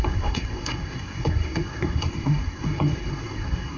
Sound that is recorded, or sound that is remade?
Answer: remade